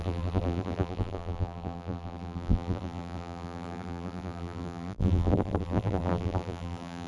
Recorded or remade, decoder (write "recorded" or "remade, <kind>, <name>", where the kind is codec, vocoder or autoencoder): remade, vocoder, BigVGAN v2